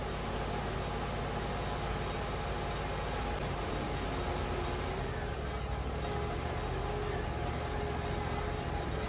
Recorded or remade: recorded